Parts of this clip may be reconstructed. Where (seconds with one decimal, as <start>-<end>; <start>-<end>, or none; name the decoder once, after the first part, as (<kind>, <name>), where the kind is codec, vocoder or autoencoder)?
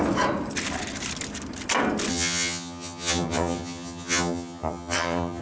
2.1-5.4 (vocoder, HiFi-GAN)